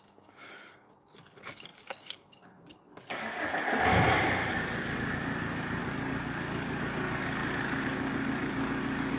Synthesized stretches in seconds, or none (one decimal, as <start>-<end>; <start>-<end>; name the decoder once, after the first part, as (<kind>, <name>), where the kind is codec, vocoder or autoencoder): 0.0-3.9 (codec, DAC); 4.5-9.2